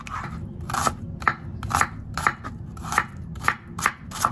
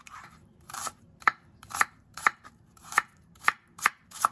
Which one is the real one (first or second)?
first